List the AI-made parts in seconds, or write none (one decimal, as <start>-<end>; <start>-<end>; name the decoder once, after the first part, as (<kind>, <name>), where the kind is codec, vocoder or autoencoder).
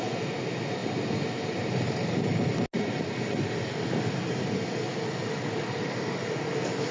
none